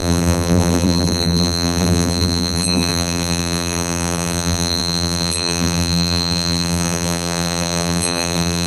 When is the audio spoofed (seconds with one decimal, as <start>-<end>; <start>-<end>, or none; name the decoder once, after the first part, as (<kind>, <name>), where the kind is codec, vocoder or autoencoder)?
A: 0.0-8.7 (vocoder, BigVGAN v2)